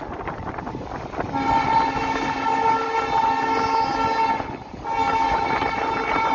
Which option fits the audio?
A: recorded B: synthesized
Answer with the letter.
A